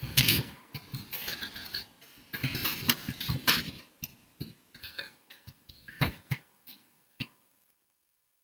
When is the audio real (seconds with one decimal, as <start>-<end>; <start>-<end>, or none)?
0.7-4.8